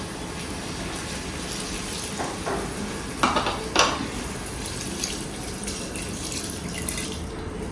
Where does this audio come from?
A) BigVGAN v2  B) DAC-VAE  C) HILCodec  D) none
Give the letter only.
D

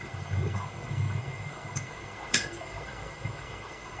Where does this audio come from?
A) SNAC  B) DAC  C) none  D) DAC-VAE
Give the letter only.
A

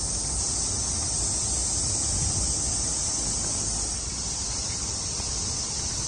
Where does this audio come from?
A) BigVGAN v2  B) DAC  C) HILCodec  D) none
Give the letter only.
D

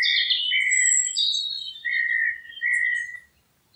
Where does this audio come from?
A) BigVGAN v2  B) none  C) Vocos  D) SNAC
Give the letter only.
B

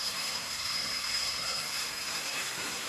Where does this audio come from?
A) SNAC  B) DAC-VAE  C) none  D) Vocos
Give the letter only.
A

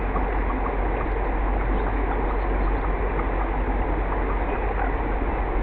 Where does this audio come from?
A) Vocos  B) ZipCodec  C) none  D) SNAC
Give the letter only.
C